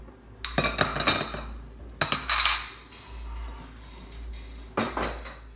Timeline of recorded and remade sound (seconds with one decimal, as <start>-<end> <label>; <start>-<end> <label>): 0.0-5.6 recorded